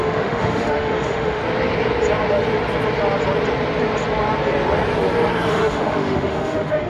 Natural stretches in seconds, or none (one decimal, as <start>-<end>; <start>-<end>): 1.4-5.5